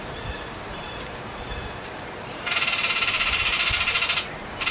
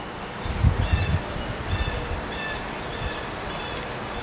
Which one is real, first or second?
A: second